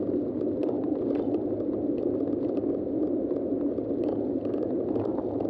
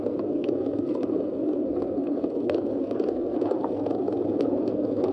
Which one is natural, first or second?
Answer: first